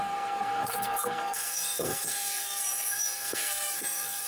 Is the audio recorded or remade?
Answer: remade